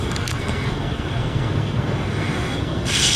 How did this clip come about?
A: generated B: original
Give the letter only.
A